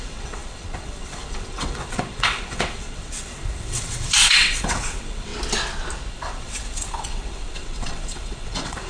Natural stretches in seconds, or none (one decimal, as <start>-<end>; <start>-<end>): 5.3-6.1